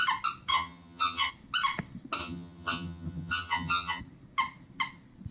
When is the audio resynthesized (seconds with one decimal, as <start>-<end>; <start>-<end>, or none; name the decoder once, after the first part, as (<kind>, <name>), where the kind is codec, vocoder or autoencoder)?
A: 0.5-1.3 (vocoder, HiFi-GAN); 2.2-4.0